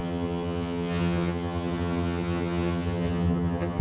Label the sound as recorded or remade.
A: remade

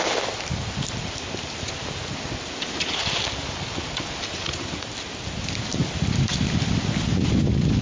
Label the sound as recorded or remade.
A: recorded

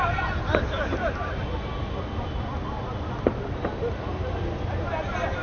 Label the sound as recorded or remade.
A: recorded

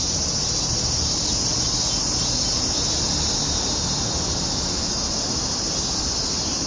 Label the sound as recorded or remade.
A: recorded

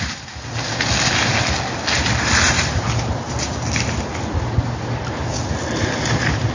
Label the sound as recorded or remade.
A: recorded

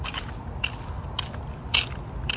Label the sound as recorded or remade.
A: recorded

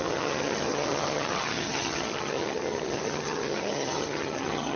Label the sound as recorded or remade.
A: remade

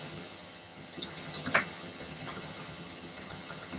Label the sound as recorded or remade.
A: remade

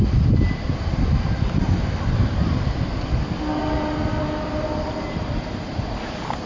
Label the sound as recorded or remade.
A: recorded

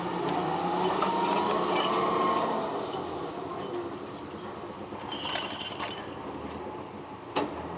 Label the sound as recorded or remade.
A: recorded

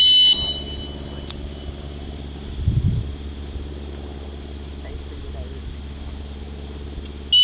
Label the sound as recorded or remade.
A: recorded